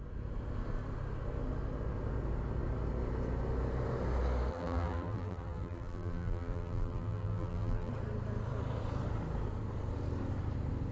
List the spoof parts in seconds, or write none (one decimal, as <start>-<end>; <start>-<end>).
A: 4.5-7.9